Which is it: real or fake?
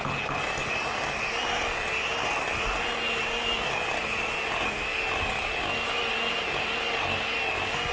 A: real